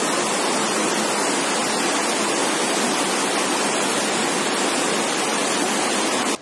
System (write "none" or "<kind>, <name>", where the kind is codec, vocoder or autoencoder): none